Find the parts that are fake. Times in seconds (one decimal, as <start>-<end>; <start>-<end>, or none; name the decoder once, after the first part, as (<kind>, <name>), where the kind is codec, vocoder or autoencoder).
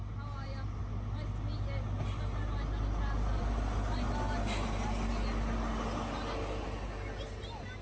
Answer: none